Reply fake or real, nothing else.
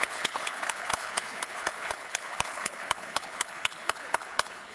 fake